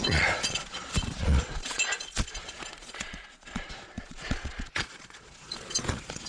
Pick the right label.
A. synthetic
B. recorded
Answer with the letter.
A